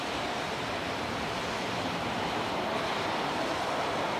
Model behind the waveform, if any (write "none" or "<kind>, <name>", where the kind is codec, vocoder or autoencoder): vocoder, BigVGAN v2